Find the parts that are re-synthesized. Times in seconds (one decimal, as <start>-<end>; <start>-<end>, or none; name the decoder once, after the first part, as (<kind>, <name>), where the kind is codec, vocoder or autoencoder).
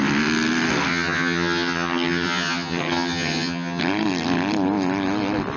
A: 0.9-3.8 (vocoder, HiFi-GAN)